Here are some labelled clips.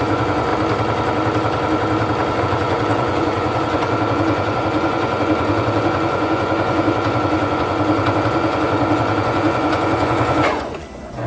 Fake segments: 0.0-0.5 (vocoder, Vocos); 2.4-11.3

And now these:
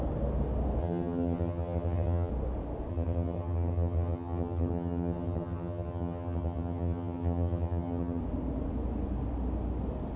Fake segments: 0.8-2.3 (vocoder, HiFi-GAN); 2.9-8.2

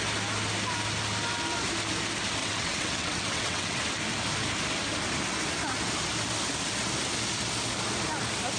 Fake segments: 2.4-3.8 (vocoder, WaveNeXt)

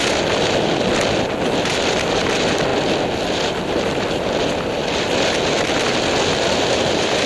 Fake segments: none

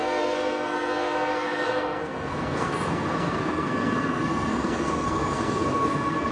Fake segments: 0.0-6.3 (codec, SNAC)

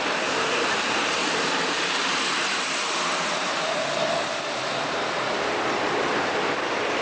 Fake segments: 0.0-7.0 (vocoder, BigVGAN v2)

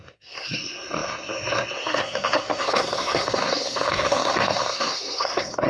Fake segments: 0.0-5.7 (codec, SNAC)